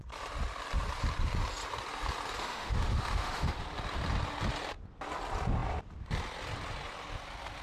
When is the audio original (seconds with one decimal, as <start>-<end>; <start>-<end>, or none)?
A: 0.0-2.4; 3.6-7.6